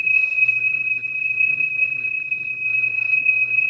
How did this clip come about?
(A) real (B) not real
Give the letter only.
B